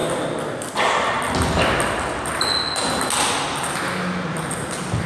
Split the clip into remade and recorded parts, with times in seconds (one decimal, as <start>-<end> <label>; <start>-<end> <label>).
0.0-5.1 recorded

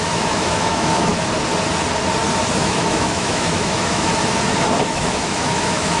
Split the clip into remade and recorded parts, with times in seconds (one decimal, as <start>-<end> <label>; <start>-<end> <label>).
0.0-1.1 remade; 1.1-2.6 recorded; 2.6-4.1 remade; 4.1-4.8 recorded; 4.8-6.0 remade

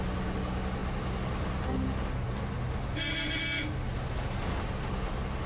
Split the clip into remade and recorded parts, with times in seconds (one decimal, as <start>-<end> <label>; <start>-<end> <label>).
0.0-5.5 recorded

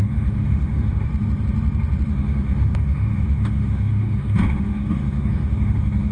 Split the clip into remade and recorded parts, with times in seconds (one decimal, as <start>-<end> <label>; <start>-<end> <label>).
0.0-1.1 remade; 1.1-2.1 recorded; 2.1-6.1 remade